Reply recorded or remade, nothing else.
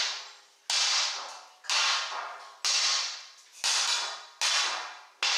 recorded